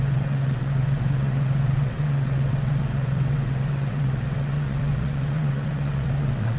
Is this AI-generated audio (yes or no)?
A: yes